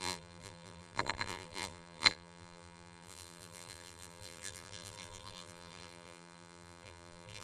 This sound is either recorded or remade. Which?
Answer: remade